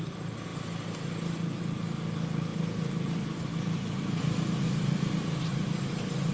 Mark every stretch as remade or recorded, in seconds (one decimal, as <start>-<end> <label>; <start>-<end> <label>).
0.0-6.3 recorded